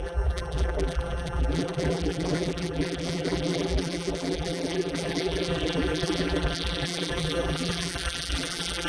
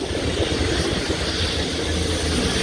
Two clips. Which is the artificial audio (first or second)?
first